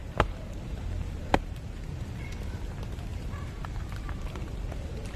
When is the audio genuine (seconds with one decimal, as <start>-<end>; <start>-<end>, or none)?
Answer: 2.4-3.1